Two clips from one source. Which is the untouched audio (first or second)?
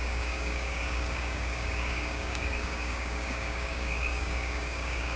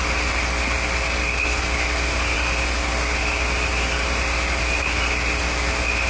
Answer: second